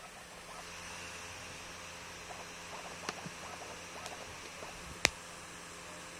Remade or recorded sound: recorded